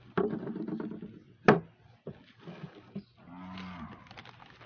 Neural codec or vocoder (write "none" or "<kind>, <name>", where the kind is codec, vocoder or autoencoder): none